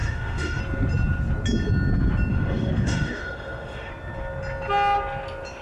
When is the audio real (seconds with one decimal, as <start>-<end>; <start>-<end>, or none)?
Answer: 0.6-2.3; 3.9-5.6